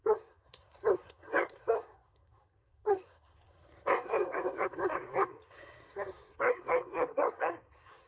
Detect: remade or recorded remade